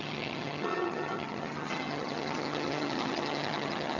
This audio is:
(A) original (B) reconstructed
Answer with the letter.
B